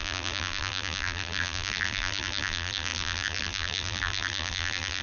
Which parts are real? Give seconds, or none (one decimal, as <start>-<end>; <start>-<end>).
none